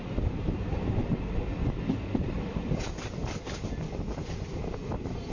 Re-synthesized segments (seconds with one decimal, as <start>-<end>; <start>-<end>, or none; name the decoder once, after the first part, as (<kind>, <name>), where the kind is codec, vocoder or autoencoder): none